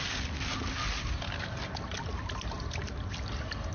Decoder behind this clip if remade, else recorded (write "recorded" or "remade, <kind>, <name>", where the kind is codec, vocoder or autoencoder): recorded